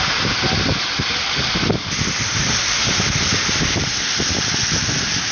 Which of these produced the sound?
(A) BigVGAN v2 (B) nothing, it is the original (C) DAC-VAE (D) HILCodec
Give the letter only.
B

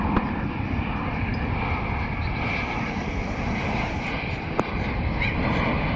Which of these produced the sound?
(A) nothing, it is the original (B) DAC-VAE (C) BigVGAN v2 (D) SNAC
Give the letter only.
A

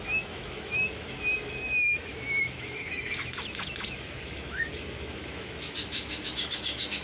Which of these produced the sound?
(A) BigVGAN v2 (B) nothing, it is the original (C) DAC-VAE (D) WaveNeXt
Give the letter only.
C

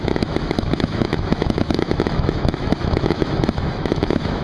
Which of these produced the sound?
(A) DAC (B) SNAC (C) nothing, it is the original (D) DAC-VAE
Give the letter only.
D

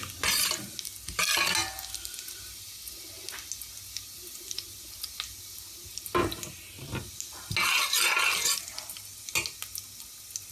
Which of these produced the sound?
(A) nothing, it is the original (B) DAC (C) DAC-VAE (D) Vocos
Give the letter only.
A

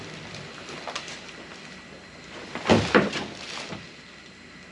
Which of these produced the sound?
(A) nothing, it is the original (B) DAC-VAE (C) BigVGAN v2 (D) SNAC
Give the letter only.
A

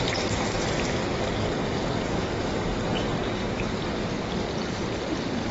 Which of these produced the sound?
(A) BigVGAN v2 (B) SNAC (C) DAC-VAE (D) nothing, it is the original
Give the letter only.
D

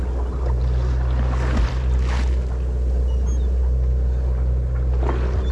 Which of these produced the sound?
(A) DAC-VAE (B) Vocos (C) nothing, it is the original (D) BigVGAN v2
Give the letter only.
C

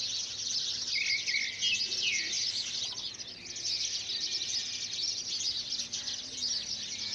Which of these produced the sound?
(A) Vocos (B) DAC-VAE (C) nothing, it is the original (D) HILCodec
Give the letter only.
C